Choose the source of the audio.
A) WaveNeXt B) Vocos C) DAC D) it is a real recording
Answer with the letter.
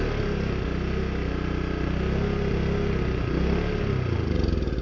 D